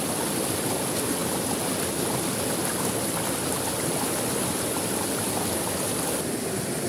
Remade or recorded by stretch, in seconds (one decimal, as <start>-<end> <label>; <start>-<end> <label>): 0.0-6.9 recorded